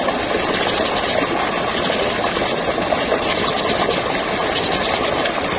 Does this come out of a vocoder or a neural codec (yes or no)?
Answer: no